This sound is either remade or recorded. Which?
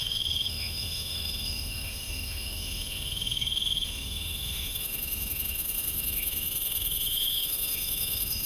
remade